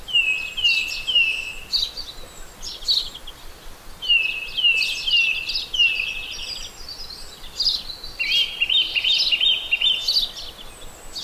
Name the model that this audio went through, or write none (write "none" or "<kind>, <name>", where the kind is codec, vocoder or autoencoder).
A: none